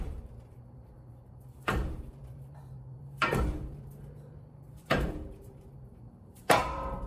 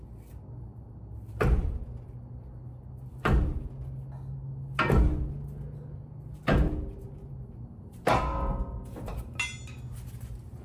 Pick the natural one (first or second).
second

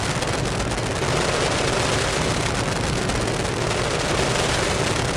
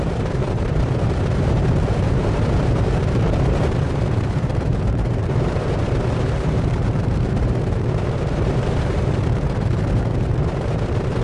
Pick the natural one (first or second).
first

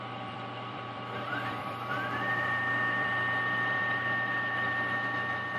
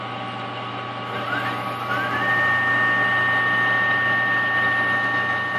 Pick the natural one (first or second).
second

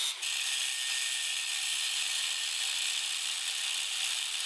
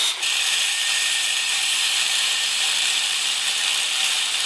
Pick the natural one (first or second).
first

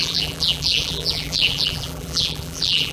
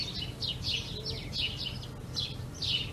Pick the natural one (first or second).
second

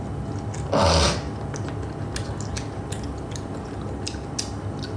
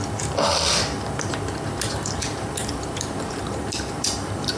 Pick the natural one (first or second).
first